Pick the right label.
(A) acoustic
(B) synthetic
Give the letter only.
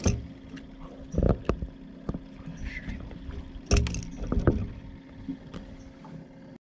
A